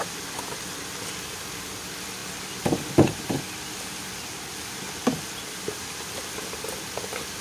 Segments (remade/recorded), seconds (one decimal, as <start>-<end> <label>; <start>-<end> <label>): 0.0-7.4 recorded